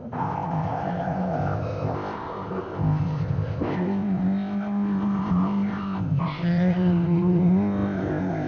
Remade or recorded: remade